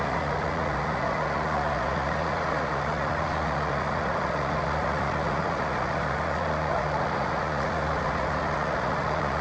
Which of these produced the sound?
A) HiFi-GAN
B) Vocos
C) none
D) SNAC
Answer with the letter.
B